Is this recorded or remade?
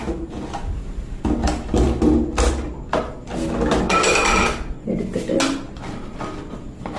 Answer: recorded